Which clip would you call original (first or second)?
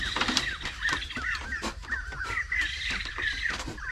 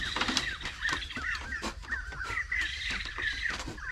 first